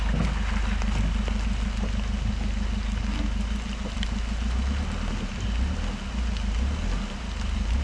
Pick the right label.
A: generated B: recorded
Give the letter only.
B